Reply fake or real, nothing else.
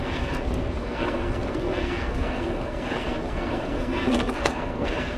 fake